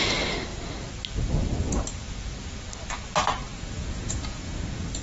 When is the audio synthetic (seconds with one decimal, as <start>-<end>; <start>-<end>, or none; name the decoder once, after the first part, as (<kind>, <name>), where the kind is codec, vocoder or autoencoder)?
3.5-4.6 (vocoder, Vocos)